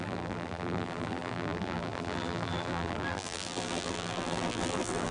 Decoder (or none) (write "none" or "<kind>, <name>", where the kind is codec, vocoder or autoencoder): vocoder, BigVGAN v2